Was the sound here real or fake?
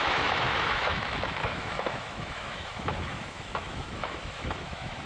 fake